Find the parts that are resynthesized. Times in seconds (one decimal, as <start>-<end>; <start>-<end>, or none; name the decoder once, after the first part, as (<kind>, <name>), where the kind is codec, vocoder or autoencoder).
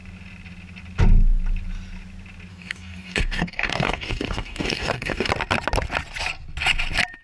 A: 2.5-5.3 (codec, DAC)